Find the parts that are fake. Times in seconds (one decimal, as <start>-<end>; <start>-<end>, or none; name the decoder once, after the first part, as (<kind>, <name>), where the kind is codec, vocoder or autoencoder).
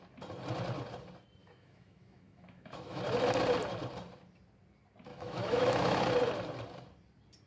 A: 1.4-3.0 (autoencoder, DAC-VAE); 5.1-6.0